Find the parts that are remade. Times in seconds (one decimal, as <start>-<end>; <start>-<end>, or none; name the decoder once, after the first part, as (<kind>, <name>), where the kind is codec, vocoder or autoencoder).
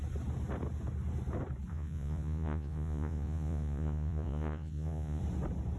1.7-5.2 (vocoder, Vocos)